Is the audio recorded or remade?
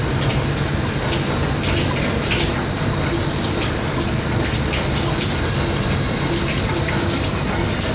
recorded